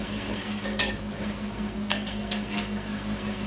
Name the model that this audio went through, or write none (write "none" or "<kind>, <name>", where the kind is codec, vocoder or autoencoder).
codec, SNAC